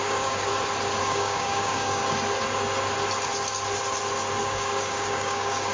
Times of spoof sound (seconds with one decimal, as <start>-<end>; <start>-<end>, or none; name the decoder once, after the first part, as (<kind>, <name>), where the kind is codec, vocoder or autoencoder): 0.0-0.5 (codec, DAC); 1.0-2.0; 4.4-5.7